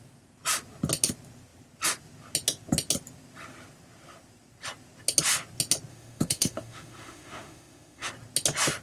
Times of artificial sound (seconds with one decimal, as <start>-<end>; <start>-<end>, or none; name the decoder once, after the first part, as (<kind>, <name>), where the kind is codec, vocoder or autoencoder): 5.9-8.1 (autoencoder, DAC-VAE)